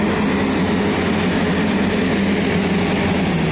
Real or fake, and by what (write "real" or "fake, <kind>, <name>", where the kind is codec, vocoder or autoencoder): real